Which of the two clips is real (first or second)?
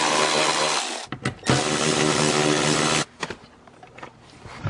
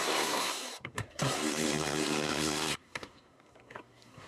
first